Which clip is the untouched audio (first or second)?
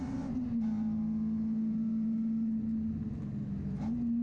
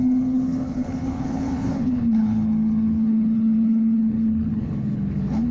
first